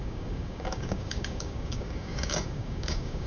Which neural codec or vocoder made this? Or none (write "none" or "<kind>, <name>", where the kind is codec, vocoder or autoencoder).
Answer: codec, DAC